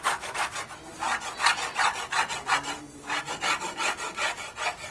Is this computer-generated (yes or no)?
no